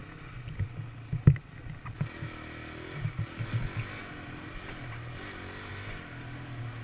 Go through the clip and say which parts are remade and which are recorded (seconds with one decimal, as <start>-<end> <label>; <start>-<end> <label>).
0.0-6.8 recorded

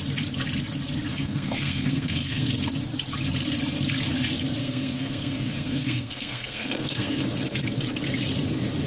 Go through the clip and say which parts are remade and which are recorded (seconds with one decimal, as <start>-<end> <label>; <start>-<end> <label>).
0.0-1.1 recorded; 1.1-2.5 remade; 2.5-4.6 recorded; 4.6-7.2 remade; 7.2-8.9 recorded

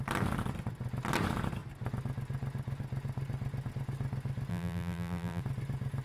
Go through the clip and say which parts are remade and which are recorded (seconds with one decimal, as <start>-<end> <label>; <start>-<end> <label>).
0.0-4.5 recorded; 4.5-5.4 remade; 5.4-6.0 recorded